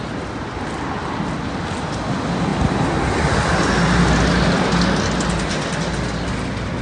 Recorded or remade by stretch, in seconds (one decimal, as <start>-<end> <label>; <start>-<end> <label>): 0.0-6.8 recorded